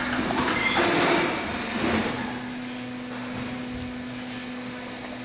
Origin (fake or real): real